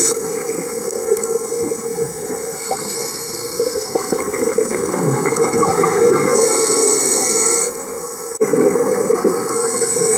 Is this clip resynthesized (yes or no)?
yes